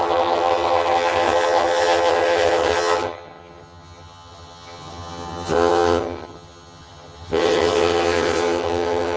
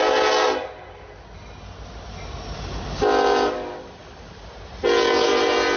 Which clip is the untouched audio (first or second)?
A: second